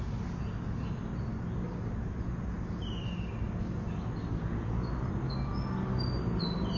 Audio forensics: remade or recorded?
recorded